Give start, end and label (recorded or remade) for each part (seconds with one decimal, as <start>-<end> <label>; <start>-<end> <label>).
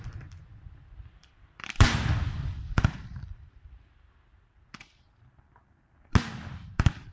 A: 0.0-1.2 recorded; 1.2-3.9 remade; 3.9-7.1 recorded